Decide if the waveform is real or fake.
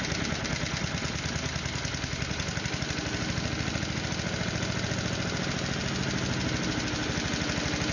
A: real